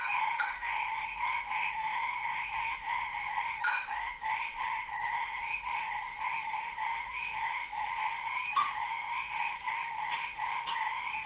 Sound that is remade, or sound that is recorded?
remade